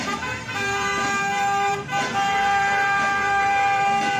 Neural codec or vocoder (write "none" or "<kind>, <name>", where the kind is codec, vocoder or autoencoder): vocoder, BigVGAN v2